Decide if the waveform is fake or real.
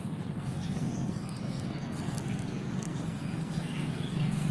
fake